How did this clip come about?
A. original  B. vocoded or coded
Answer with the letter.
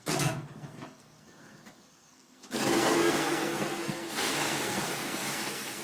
B